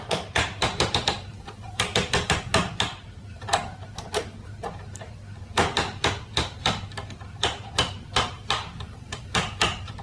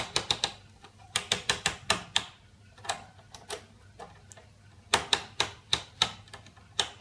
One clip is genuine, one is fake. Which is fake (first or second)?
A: first